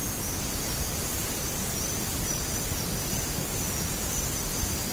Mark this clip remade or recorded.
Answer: recorded